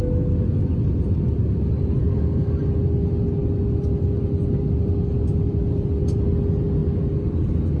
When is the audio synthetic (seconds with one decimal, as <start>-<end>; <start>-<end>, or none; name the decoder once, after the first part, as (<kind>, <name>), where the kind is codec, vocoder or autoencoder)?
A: 2.0-2.6 (codec, DAC)